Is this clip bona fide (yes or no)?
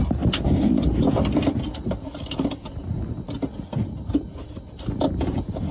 yes